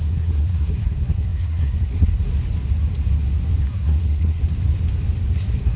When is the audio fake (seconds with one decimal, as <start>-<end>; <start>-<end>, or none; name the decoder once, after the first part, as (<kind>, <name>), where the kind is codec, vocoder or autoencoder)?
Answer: 0.0-2.3 (codec, SNAC); 3.6-4.4; 5.3-5.8